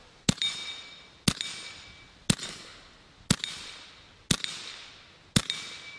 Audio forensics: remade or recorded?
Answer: recorded